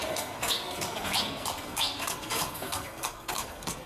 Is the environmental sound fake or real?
fake